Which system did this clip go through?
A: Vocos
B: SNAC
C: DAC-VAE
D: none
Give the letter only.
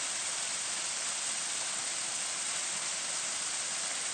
D